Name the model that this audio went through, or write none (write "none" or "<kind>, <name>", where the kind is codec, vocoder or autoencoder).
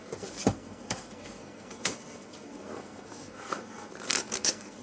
codec, SNAC